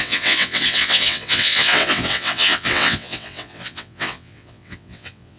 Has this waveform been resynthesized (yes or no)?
yes